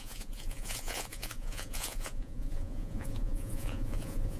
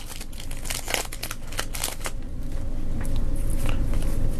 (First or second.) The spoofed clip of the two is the first